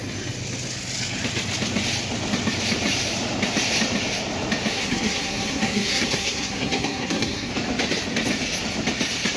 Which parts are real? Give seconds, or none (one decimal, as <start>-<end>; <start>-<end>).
0.0-4.7; 7.5-9.4